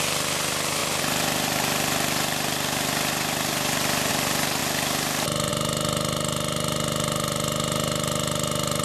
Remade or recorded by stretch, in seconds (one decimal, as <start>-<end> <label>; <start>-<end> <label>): 0.0-8.8 recorded